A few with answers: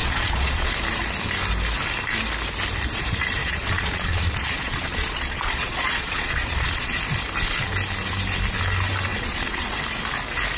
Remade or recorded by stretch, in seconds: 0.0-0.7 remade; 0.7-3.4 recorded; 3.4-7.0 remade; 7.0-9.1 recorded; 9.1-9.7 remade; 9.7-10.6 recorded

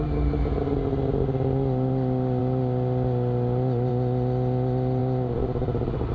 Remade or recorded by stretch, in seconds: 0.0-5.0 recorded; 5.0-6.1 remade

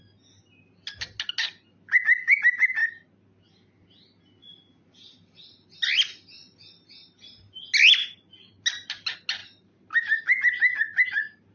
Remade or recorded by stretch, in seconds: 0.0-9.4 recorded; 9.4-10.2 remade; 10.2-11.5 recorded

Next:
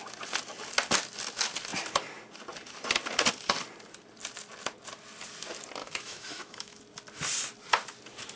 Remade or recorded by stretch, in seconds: 0.0-5.8 recorded; 5.8-6.8 remade; 6.8-8.4 recorded